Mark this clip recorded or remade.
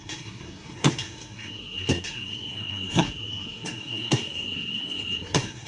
remade